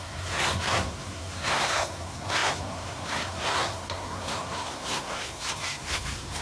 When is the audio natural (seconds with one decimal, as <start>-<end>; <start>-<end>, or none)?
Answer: none